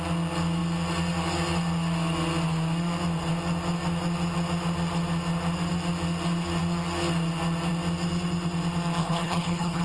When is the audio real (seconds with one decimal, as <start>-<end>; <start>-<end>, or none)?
0.0-9.0